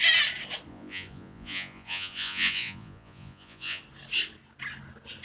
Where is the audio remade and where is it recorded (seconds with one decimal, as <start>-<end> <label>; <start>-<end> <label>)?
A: 0.0-0.7 recorded; 0.7-3.8 remade; 3.8-5.2 recorded